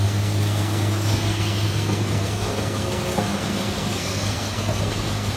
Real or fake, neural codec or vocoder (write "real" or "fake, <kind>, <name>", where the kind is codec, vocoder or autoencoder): fake, codec, SNAC